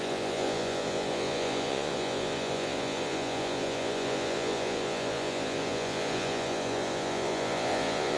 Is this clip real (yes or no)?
no